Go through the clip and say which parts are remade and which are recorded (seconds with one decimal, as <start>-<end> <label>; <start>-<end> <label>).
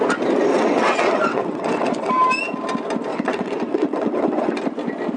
0.0-0.5 recorded; 0.5-2.1 remade; 2.1-3.1 recorded; 3.1-4.6 remade; 4.6-5.2 recorded